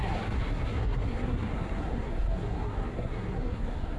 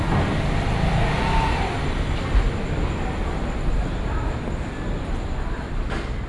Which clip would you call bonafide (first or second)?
second